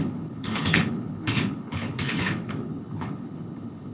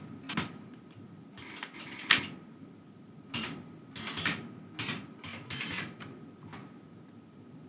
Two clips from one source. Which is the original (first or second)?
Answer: second